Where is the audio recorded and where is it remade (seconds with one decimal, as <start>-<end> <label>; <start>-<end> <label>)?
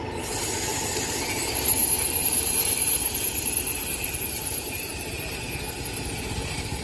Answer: 0.0-0.7 recorded; 0.7-1.4 remade; 1.4-1.8 recorded; 1.8-3.3 remade; 3.3-3.8 recorded; 3.8-5.4 remade; 5.4-6.8 recorded